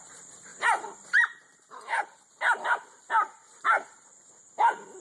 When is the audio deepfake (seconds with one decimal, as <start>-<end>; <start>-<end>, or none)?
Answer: 0.5-2.3; 3.4-4.1